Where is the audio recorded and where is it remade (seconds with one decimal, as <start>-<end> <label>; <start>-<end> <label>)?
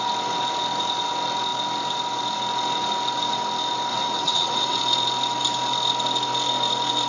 0.0-3.9 recorded; 3.9-4.8 remade; 4.8-7.1 recorded